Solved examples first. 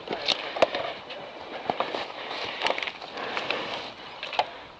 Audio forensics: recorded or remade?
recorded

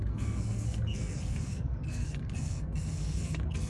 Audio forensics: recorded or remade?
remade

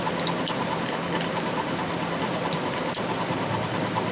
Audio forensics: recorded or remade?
recorded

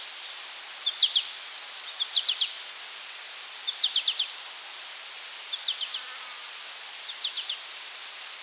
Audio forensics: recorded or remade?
recorded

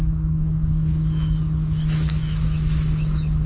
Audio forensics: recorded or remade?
remade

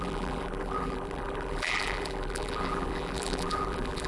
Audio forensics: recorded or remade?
remade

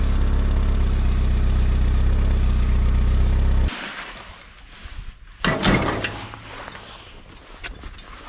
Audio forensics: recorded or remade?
recorded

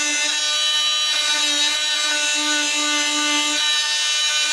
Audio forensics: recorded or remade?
recorded